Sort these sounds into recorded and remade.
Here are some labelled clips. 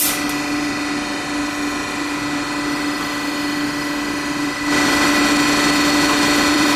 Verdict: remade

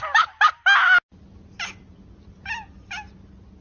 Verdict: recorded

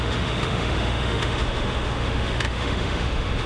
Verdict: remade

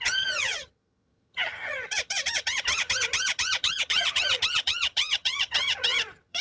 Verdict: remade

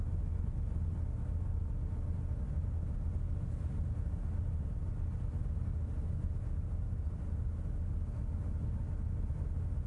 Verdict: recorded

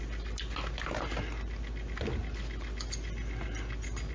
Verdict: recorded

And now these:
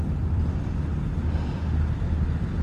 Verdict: recorded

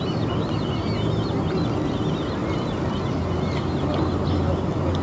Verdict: recorded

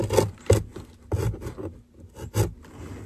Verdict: recorded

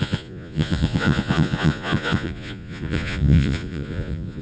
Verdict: remade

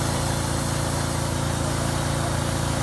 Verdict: recorded